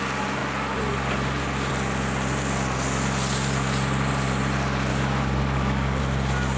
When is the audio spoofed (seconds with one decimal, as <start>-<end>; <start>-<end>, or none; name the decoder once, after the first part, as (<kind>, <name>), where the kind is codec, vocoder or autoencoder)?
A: 4.9-6.0 (codec, DAC)